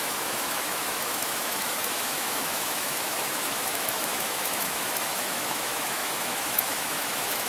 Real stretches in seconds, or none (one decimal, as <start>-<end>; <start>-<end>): none